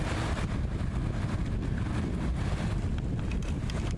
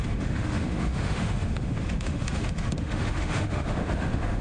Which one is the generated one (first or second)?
second